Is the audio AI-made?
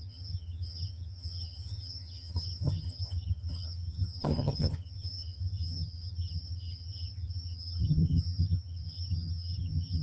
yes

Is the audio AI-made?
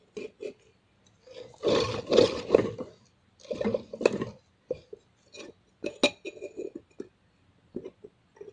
no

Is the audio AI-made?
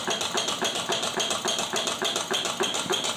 no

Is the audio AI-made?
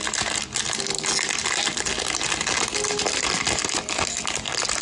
no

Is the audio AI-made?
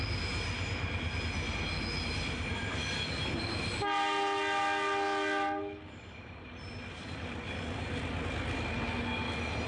no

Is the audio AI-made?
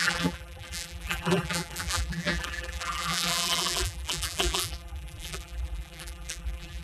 yes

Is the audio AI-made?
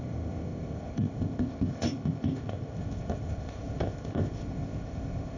yes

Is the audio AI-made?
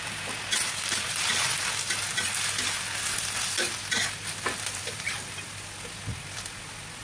no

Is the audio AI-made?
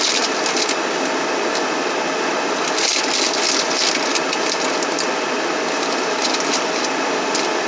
no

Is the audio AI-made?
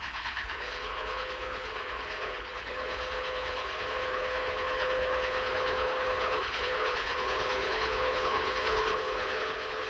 yes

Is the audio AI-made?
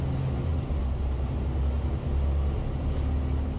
no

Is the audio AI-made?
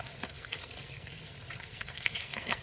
yes